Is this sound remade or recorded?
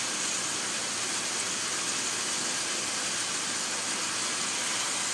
recorded